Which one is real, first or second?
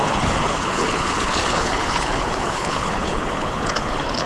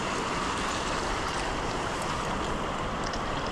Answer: second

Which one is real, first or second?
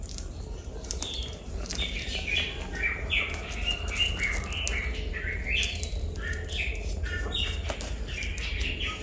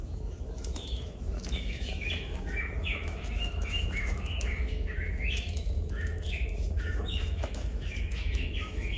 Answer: first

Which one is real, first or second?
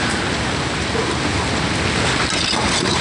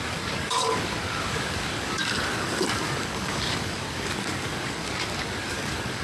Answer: first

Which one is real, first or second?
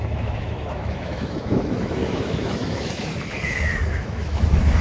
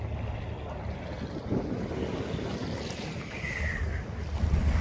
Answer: second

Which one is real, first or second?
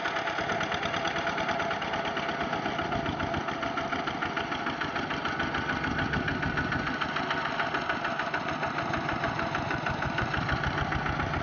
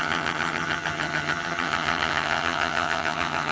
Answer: first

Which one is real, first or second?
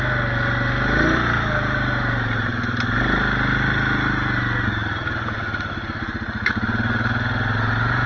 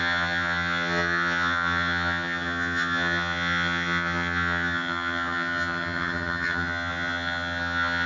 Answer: first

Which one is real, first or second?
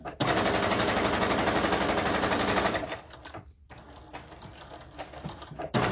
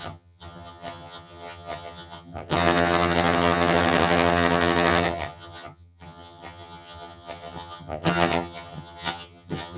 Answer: first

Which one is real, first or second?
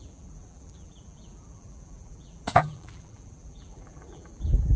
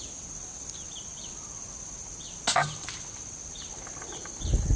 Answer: second